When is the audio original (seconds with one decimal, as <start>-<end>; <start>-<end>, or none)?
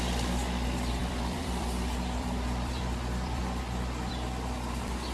0.0-1.0; 4.1-5.1